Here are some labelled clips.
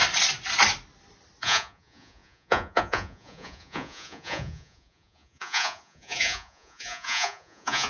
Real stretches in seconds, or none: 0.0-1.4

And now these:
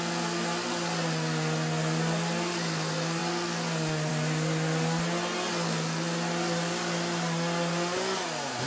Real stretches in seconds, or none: 0.0-8.7

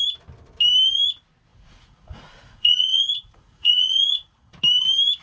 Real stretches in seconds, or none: 0.0-1.5; 4.6-5.2

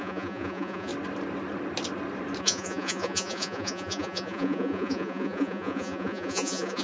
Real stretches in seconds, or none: 0.9-2.4

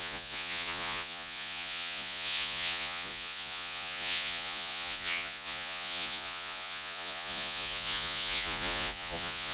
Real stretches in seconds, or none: none

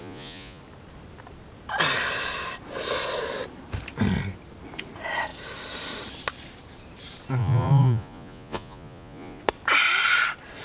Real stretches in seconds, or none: 0.6-7.4; 9.4-10.6